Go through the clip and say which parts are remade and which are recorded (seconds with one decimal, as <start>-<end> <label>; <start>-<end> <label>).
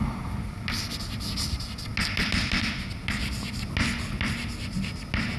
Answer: 0.0-5.4 recorded